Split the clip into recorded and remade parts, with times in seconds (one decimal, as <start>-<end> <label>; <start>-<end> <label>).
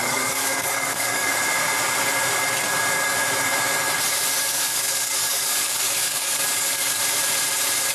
0.0-1.3 remade; 1.3-4.4 recorded; 4.4-7.0 remade; 7.0-7.9 recorded